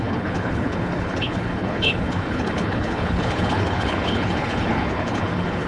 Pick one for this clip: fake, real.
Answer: fake